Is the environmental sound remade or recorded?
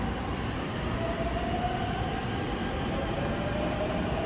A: recorded